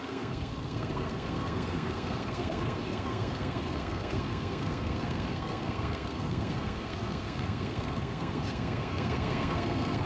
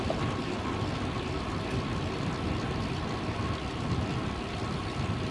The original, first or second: second